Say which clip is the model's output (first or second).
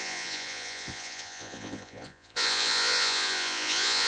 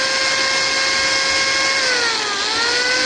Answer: first